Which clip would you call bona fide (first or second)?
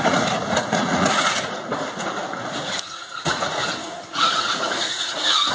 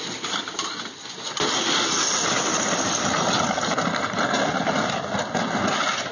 second